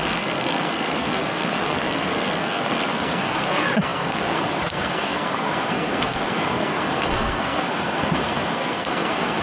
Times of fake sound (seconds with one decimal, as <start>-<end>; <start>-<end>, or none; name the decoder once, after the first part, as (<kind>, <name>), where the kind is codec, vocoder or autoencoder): 0.0-9.4 (codec, SNAC)